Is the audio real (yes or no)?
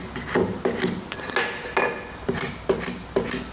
yes